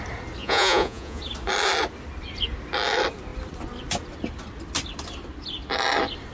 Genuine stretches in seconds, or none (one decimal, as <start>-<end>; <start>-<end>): 0.0-0.4; 1.2-6.3